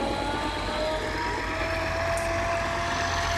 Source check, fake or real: real